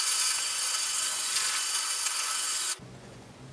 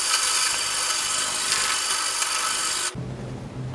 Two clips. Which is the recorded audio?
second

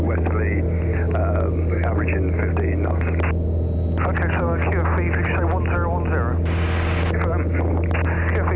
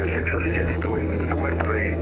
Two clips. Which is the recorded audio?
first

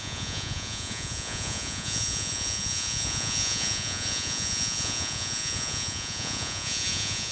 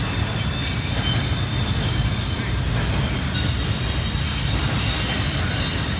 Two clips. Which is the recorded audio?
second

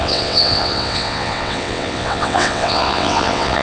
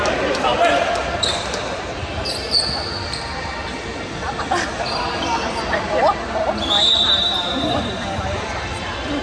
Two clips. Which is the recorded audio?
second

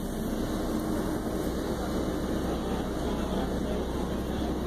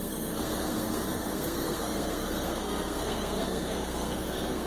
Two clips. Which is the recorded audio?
first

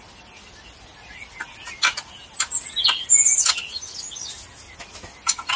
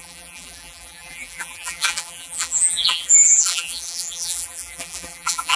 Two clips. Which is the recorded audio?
first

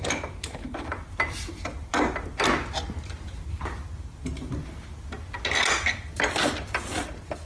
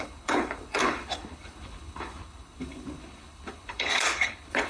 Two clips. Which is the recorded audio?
first